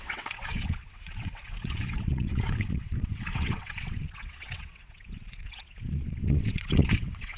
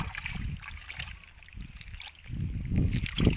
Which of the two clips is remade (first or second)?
first